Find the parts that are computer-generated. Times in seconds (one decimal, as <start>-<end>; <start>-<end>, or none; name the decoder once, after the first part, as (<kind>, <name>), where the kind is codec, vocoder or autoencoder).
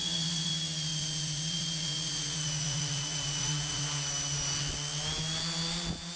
0.0-0.5 (vocoder, Vocos); 0.9-3.8